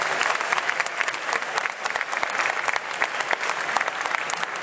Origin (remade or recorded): remade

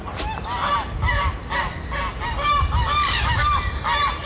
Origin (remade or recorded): recorded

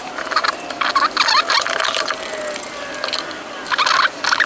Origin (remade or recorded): recorded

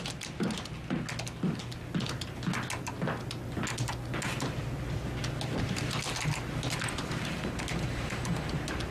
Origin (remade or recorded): recorded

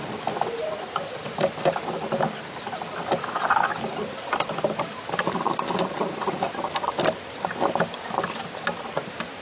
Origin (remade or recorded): recorded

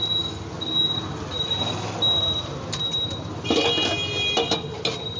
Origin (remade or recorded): recorded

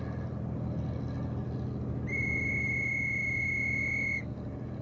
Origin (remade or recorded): recorded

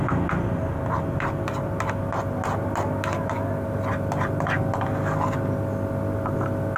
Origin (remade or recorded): recorded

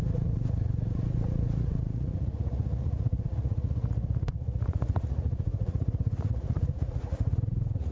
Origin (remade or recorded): remade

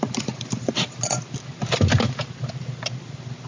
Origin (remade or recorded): recorded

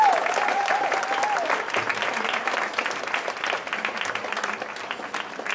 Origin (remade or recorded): recorded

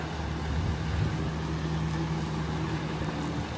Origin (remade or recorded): recorded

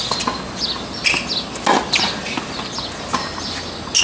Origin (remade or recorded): recorded